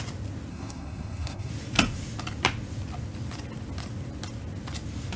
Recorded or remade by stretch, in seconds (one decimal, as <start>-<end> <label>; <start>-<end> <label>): 0.0-0.5 recorded; 0.5-1.5 remade; 1.5-5.2 recorded